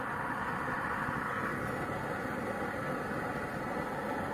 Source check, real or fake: real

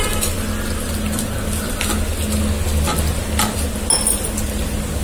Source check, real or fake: real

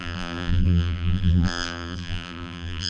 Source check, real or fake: fake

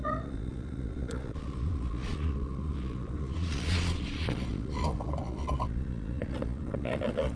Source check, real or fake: fake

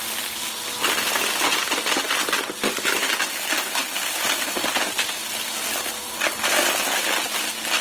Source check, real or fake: real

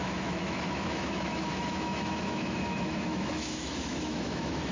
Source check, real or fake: fake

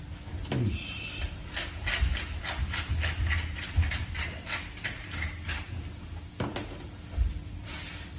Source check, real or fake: real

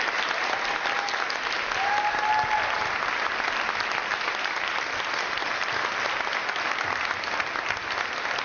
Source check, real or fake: real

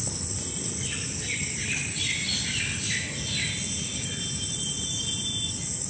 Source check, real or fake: real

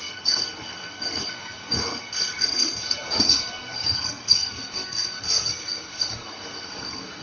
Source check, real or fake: fake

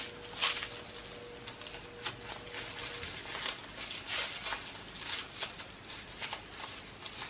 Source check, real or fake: real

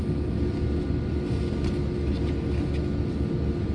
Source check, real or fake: real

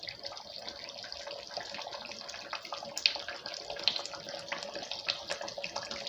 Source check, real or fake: real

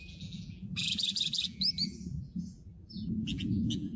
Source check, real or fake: fake